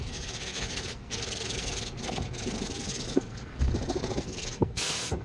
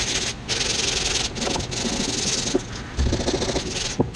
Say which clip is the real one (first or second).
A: second